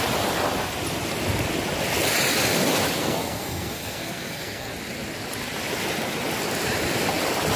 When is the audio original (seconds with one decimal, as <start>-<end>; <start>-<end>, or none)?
0.0-3.0; 4.7-7.6